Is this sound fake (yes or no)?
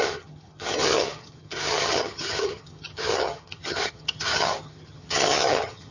yes